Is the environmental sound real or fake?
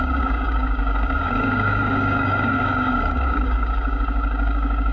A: fake